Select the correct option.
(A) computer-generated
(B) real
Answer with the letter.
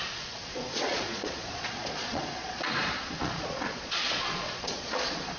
A